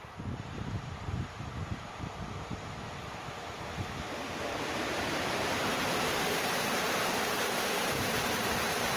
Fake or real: fake